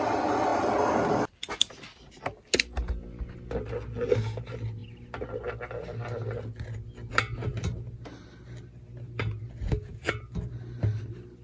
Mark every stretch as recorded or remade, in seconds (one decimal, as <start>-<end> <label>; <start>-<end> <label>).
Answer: 0.0-11.4 recorded